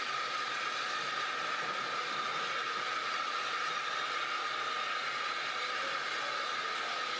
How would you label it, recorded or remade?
recorded